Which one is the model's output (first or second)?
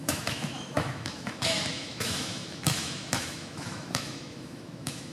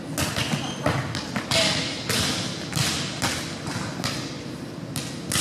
first